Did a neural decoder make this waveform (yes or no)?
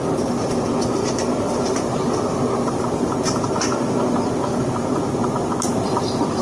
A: no